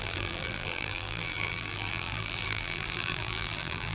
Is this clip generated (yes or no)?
yes